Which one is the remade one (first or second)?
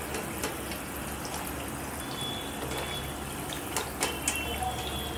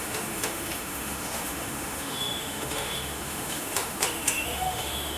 second